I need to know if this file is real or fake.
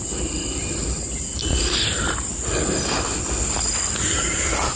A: real